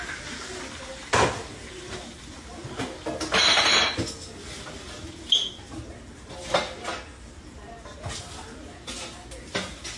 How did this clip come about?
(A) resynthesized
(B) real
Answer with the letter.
B